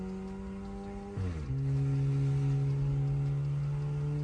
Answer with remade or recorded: recorded